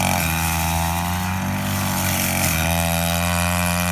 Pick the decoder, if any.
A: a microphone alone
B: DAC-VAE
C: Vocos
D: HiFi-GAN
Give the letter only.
A